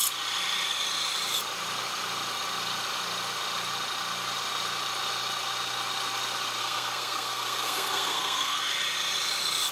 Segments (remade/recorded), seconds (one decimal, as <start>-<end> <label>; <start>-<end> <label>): 0.0-6.6 recorded; 6.6-8.6 remade; 8.6-9.7 recorded